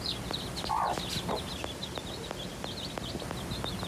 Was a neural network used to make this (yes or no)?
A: yes